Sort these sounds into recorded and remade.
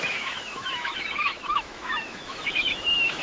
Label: remade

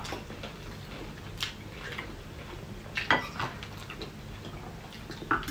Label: recorded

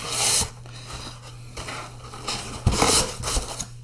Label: recorded